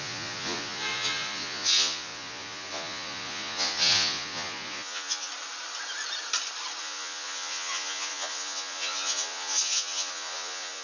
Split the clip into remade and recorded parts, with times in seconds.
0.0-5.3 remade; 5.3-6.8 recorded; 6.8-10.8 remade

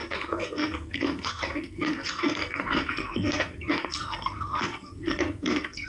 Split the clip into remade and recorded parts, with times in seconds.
0.0-5.9 remade

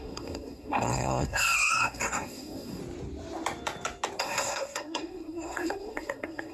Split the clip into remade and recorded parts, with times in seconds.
0.0-2.8 remade; 2.8-4.2 recorded; 4.2-6.5 remade

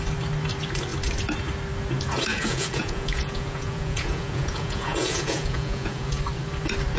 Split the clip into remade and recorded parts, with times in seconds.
0.0-2.3 recorded; 2.3-6.2 remade; 6.2-7.0 recorded

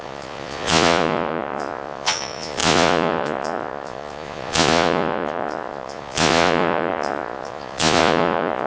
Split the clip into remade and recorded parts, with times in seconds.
0.0-8.7 remade

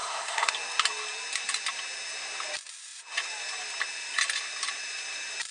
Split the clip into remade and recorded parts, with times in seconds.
0.0-0.5 remade; 0.5-5.5 recorded

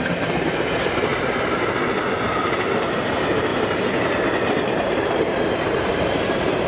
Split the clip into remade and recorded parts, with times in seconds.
0.0-1.1 remade; 1.1-1.9 recorded; 1.9-3.5 remade; 3.5-4.6 recorded; 4.6-6.7 remade